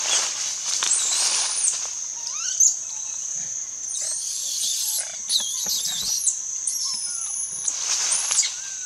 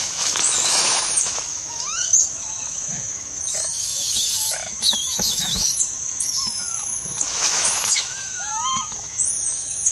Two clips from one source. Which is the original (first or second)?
first